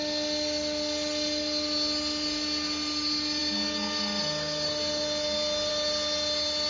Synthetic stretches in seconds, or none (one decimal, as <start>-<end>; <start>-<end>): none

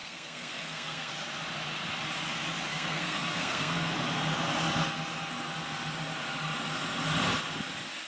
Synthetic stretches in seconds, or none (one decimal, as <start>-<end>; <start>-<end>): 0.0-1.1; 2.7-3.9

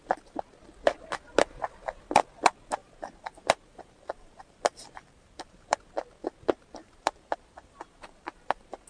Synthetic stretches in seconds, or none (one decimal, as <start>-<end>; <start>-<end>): 2.8-5.8; 6.8-8.9